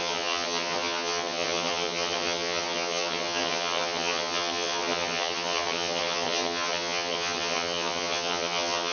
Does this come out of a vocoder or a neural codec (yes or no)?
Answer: yes